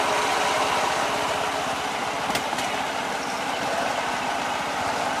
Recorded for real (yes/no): yes